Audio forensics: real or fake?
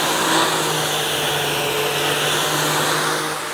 real